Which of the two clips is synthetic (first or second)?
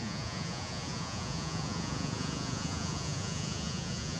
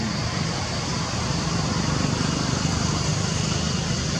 first